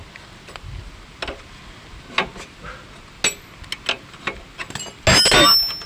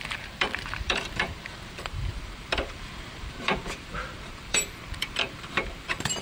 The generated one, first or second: second